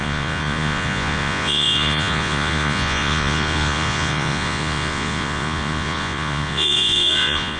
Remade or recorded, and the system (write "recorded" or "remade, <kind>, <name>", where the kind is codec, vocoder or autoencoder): remade, vocoder, Vocos